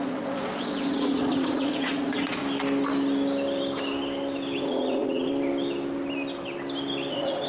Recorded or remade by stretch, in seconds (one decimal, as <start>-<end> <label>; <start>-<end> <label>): 0.0-2.4 remade; 2.4-4.6 recorded; 4.6-5.3 remade; 5.3-7.1 recorded; 7.1-7.5 remade